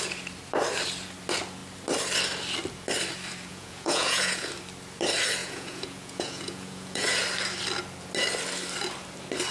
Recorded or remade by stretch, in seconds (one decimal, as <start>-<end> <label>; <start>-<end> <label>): 0.0-3.5 recorded; 3.5-4.5 remade; 4.5-5.4 recorded; 5.4-7.2 remade; 7.2-9.5 recorded